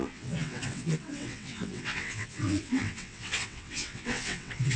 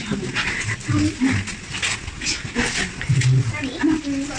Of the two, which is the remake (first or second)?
first